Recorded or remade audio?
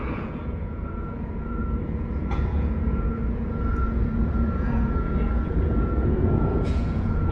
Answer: remade